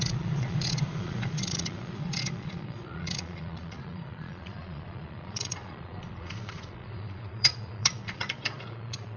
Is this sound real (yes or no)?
no